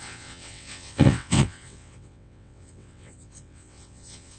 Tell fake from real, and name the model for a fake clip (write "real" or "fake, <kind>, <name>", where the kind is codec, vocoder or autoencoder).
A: fake, vocoder, WaveNeXt